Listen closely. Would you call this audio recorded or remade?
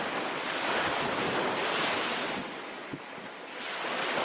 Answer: recorded